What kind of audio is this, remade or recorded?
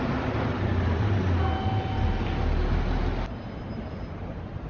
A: recorded